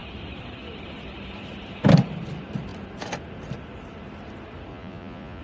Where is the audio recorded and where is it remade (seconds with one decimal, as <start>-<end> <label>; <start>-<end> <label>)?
0.0-4.7 recorded; 4.7-5.4 remade